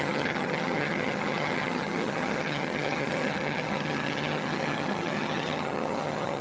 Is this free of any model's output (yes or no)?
no